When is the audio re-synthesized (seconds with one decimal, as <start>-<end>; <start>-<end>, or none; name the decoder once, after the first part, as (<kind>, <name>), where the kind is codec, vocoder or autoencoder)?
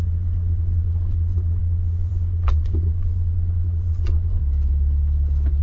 0.0-4.4 (vocoder, Vocos)